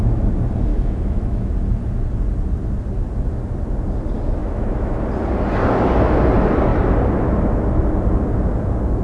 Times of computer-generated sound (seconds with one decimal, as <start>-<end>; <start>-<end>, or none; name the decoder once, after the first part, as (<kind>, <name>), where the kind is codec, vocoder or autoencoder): 0.7-1.5 (autoencoder, DAC-VAE); 4.4-5.0